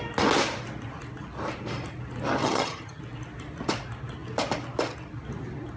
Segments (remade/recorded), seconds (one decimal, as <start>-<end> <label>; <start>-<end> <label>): 0.0-2.4 recorded; 2.4-3.0 remade; 3.0-5.8 recorded

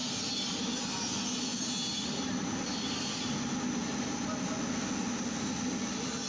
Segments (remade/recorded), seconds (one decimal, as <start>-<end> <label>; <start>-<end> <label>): 0.0-0.6 remade; 0.6-1.5 recorded; 1.5-3.3 remade; 3.3-3.8 recorded; 3.8-4.5 remade; 4.5-6.3 recorded

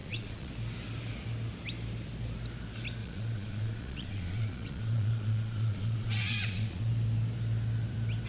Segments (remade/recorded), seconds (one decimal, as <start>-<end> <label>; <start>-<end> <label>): 0.0-0.5 remade; 0.5-3.0 recorded; 3.0-6.9 remade; 6.9-8.3 recorded